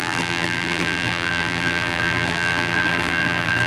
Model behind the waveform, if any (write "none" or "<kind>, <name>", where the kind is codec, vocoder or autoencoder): vocoder, BigVGAN v2